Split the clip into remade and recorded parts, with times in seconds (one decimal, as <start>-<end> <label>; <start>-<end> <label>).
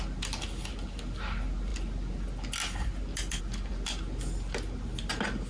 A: 0.0-5.5 recorded